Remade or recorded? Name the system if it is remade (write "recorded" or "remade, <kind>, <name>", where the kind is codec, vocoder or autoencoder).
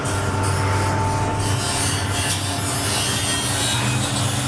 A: recorded